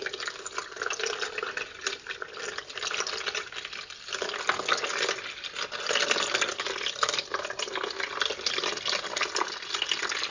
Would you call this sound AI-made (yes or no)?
no